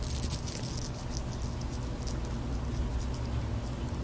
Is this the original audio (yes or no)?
yes